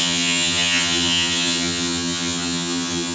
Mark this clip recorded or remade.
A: remade